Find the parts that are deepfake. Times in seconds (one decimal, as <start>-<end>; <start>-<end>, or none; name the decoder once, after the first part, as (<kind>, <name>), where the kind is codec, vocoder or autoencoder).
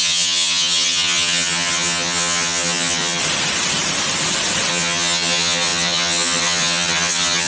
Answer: 0.0-3.2 (vocoder, HiFi-GAN); 4.7-7.5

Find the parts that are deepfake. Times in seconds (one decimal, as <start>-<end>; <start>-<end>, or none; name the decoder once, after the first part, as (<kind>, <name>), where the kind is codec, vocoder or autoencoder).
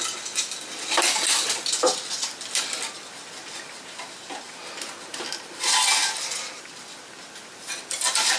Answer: none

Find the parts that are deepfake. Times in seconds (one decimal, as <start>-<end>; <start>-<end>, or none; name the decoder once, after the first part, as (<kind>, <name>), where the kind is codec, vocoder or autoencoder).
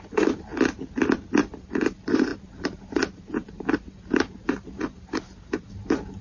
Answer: 0.0-0.5 (vocoder, BigVGAN v2); 1.4-6.2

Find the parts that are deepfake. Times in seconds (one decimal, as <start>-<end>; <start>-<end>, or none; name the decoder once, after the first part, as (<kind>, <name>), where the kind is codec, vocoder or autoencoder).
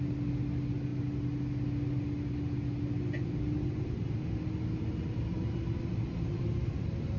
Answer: none